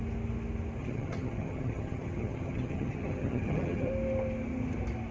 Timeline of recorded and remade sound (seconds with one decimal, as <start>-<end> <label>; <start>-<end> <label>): 0.0-0.8 recorded; 0.8-3.9 remade; 3.9-5.1 recorded